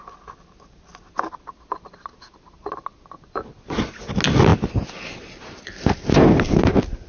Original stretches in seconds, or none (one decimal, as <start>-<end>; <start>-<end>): 0.0-7.1